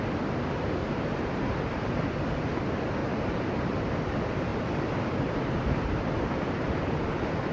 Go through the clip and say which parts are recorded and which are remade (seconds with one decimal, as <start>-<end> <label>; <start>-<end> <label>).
0.0-0.8 recorded; 0.8-2.1 remade; 2.1-4.5 recorded; 4.5-5.9 remade; 5.9-7.5 recorded